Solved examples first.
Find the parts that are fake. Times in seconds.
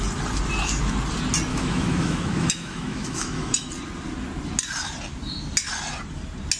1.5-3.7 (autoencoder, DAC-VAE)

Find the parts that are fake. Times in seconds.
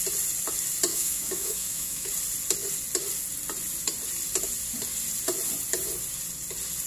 0.9-2.1 (autoencoder, DAC-VAE)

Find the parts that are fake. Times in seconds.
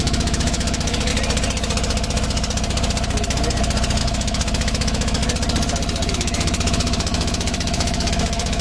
0.0-1.1 (autoencoder, DAC-VAE); 4.0-5.2; 6.1-8.6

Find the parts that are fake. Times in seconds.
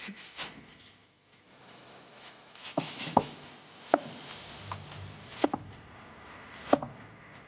1.0-3.5 (autoencoder, DAC-VAE)